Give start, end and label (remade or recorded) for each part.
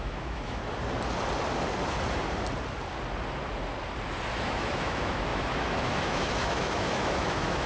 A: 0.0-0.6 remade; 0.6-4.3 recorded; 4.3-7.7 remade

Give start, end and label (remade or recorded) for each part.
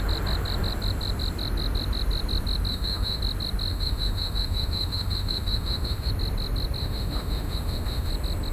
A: 0.0-2.7 recorded; 2.7-3.2 remade; 3.2-3.7 recorded; 3.7-6.1 remade; 6.1-6.8 recorded; 6.8-8.1 remade; 8.1-8.5 recorded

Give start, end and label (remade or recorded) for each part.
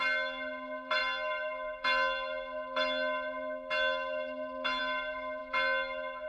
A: 0.0-6.3 recorded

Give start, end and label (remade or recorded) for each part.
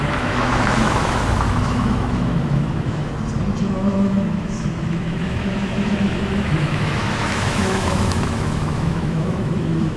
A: 0.0-3.1 remade; 3.1-3.6 recorded; 3.6-10.0 remade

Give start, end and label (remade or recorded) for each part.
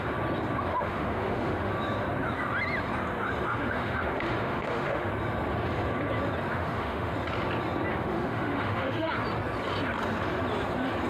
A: 0.0-0.7 recorded; 0.7-1.7 remade; 1.7-3.5 recorded; 3.5-5.1 remade; 5.1-6.5 recorded; 6.5-7.1 remade; 7.1-7.9 recorded; 7.9-9.1 remade; 9.1-11.1 recorded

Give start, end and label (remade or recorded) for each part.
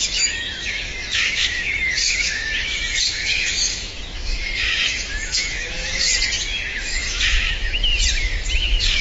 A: 0.0-6.1 remade; 6.1-6.7 recorded; 6.7-7.9 remade; 7.9-8.6 recorded; 8.6-9.0 remade